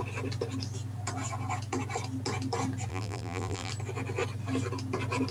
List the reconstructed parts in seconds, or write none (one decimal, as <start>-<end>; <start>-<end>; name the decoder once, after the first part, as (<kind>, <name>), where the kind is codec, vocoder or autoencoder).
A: 2.9-3.7 (vocoder, BigVGAN v2)